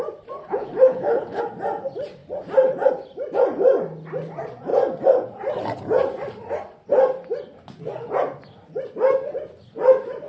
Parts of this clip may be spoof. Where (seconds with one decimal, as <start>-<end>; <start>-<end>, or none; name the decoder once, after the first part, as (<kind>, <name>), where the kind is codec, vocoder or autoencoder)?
0.4-1.4 (codec, HILCodec)